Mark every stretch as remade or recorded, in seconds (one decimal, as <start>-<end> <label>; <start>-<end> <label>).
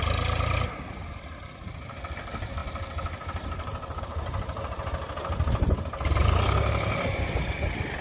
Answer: 0.0-8.0 recorded